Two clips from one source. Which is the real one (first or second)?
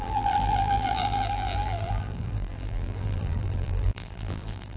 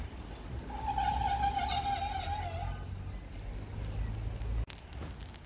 second